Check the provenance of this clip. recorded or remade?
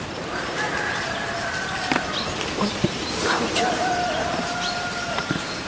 remade